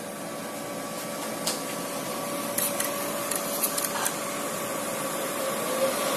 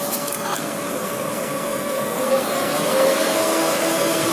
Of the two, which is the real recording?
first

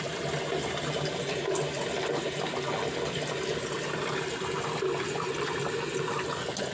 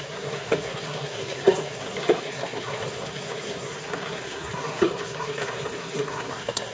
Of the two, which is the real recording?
first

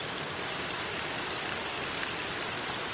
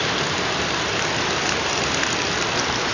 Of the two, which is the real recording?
second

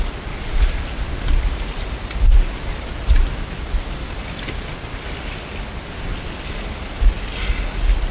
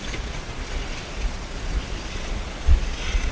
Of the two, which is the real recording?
first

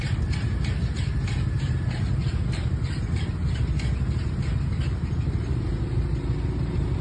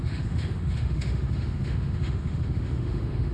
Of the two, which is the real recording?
first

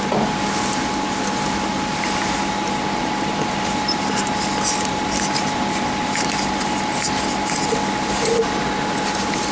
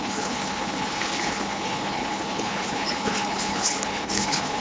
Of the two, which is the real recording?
first